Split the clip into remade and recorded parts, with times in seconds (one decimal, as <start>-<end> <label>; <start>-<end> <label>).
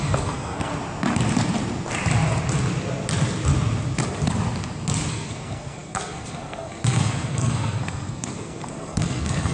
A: 0.0-0.7 remade; 0.7-5.1 recorded; 5.1-9.5 remade